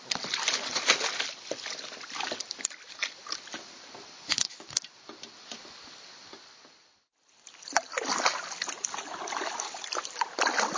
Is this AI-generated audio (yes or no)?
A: no